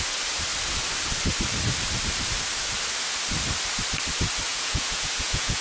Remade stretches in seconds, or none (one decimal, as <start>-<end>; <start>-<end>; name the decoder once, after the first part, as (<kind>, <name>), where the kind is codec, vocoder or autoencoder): 4.5-5.6 (vocoder, Vocos)